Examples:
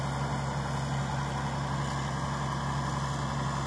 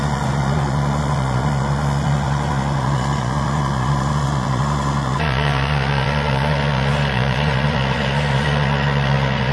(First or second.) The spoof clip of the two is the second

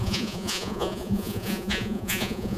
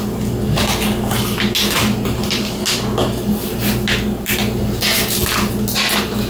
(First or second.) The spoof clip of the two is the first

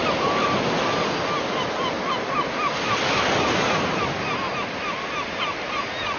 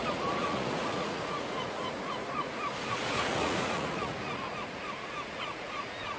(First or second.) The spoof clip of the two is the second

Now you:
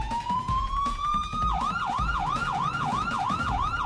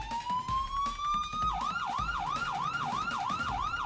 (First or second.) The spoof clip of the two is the first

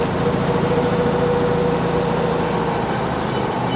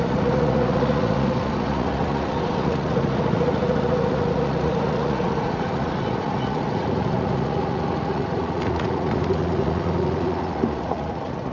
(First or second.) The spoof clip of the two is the second